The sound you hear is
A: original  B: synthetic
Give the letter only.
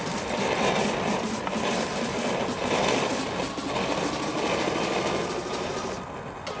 A